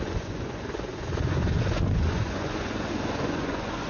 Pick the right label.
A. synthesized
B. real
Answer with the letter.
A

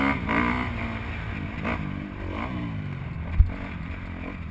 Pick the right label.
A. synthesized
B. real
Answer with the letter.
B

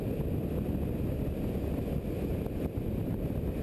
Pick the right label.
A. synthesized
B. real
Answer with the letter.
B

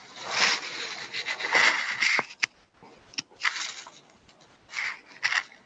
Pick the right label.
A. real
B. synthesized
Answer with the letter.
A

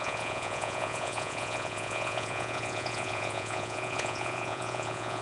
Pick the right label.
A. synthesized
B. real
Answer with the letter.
A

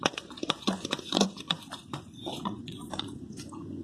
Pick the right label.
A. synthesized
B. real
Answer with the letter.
A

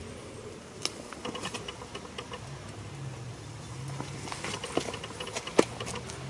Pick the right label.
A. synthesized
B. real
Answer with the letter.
B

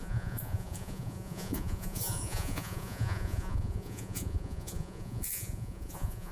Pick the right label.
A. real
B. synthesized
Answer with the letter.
B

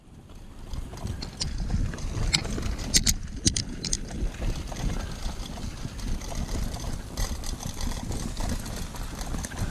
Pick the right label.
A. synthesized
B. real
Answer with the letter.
B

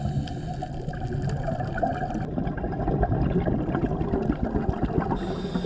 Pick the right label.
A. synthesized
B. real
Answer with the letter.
B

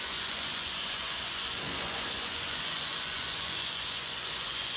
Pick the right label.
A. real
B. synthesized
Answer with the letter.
B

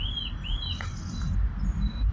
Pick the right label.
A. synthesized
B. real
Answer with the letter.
B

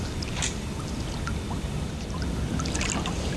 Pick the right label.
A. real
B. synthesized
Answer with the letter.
A